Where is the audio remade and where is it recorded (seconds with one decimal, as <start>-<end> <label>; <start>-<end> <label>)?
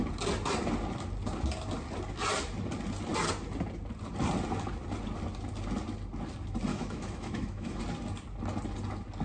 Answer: 0.0-6.7 recorded; 6.7-7.8 remade; 7.8-9.2 recorded